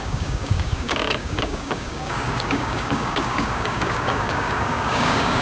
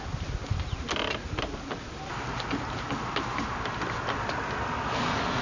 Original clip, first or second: second